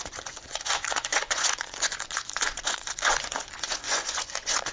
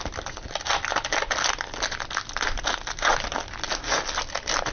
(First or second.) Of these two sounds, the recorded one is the second